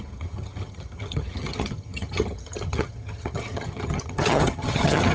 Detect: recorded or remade remade